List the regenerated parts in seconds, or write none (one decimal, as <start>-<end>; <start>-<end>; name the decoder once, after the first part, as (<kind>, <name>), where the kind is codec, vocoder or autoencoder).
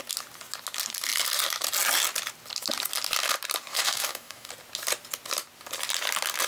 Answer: 3.7-4.5 (codec, DAC)